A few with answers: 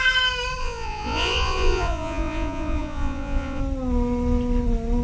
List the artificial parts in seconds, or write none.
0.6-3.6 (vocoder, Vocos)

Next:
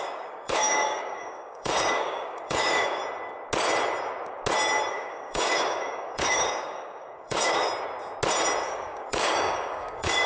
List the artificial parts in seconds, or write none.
0.0-3.0 (codec, DAC); 4.9-7.7; 8.6-10.3

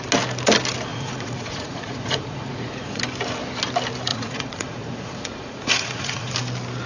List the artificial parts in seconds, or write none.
0.9-3.0 (vocoder, Vocos); 4.1-6.3

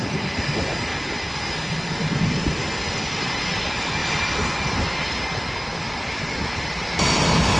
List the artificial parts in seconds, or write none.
none

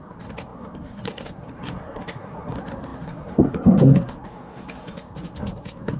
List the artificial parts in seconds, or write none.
0.0-6.0 (codec, SNAC)

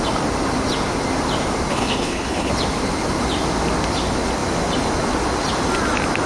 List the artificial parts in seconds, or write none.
1.7-2.5 (codec, HILCodec)

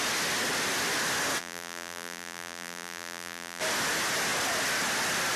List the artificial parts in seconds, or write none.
1.4-3.6 (vocoder, BigVGAN v2)